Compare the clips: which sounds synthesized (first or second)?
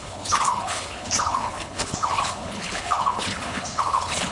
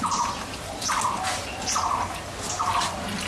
first